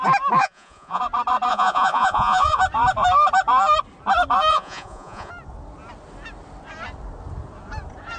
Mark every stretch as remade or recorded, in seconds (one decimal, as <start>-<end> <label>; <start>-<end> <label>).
0.0-0.4 recorded; 0.4-1.0 remade; 1.0-1.5 recorded; 1.5-2.6 remade; 2.6-4.5 recorded; 4.5-5.3 remade; 5.3-8.2 recorded